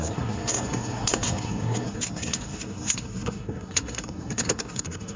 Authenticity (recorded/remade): remade